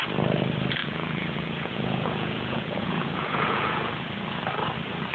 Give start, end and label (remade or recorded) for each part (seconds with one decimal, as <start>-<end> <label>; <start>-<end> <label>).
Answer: 0.0-0.8 recorded; 0.8-3.9 remade; 3.9-5.1 recorded